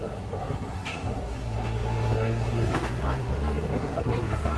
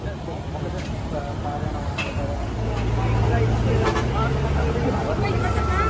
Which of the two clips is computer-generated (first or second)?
first